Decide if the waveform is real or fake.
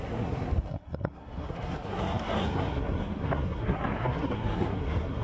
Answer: fake